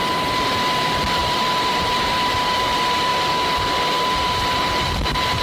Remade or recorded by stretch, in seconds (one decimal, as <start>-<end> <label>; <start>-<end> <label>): 0.0-3.1 remade; 3.1-3.7 recorded; 3.7-5.4 remade